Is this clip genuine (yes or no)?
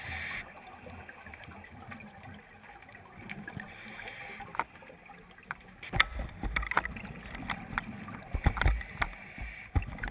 yes